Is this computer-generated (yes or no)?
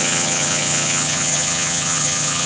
yes